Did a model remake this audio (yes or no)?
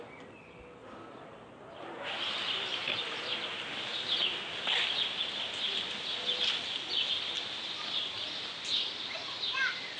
no